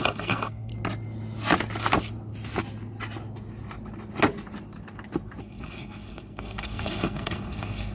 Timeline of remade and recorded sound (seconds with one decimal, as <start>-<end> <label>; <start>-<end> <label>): 0.0-0.7 remade; 0.7-5.4 recorded; 5.4-7.9 remade